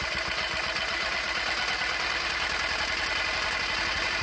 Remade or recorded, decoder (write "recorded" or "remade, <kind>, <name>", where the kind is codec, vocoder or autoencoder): recorded